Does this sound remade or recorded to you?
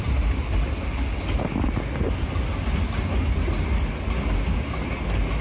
recorded